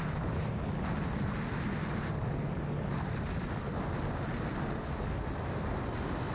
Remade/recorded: recorded